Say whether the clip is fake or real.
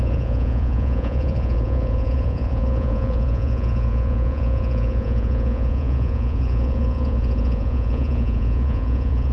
fake